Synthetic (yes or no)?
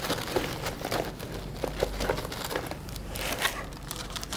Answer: no